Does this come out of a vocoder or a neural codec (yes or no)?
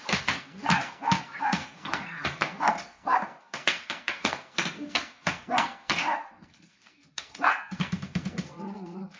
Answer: yes